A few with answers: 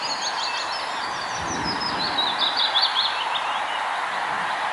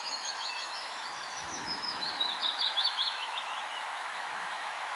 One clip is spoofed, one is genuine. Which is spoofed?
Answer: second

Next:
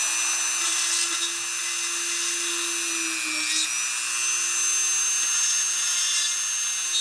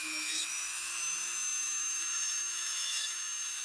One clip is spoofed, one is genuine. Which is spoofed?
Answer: second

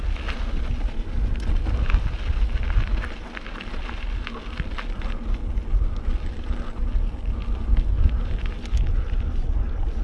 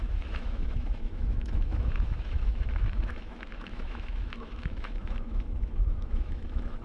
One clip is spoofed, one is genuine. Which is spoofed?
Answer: second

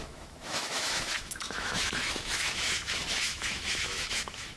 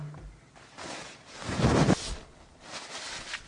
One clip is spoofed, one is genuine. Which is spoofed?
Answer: first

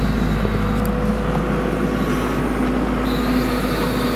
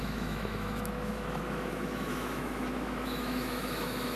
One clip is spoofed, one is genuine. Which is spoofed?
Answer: second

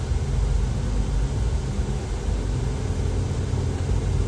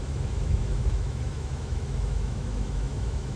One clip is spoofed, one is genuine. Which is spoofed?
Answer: second